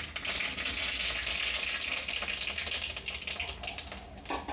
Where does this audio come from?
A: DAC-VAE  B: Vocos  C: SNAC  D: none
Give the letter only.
D